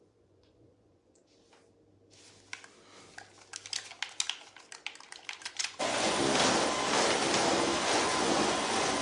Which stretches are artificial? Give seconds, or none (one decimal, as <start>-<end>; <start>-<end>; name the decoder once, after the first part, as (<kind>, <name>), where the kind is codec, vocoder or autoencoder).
0.0-1.2 (vocoder, Vocos); 5.5-6.2; 7.8-9.0

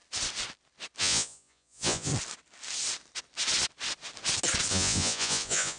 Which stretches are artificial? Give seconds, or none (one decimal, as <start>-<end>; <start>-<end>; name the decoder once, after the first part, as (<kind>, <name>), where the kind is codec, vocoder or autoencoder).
1.0-2.1 (vocoder, Vocos); 4.7-5.8